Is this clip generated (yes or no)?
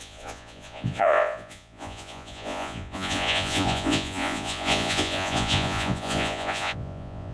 yes